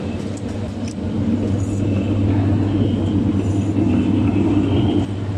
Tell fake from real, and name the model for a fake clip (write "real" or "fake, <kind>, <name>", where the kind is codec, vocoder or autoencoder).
real